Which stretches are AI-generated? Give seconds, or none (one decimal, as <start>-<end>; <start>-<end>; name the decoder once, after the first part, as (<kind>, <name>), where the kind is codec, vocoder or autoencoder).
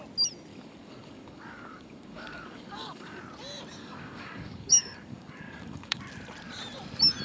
0.5-3.2 (codec, DAC); 3.8-6.0